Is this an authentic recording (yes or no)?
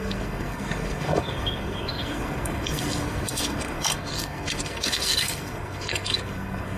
no